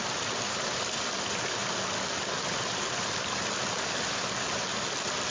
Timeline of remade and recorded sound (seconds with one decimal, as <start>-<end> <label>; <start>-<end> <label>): 0.0-5.3 recorded

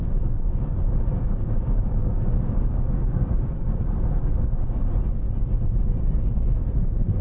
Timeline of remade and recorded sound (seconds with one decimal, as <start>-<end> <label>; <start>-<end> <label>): 0.0-1.1 recorded; 1.1-3.8 remade; 3.8-7.2 recorded

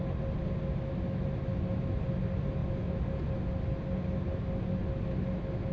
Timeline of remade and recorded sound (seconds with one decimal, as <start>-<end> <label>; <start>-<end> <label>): 0.0-5.7 recorded

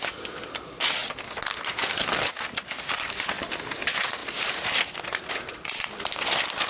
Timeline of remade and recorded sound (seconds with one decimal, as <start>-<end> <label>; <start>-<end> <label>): 0.0-4.2 recorded; 4.2-4.8 remade; 4.8-6.7 recorded

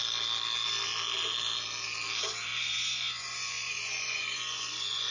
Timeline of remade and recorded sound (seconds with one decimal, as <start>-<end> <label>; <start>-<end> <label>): 0.0-2.5 recorded; 2.5-5.1 remade

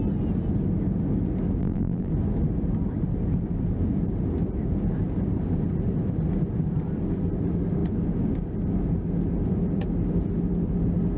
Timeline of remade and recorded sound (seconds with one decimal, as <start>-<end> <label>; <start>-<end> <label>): 0.0-1.6 recorded; 1.6-2.1 remade; 2.1-11.2 recorded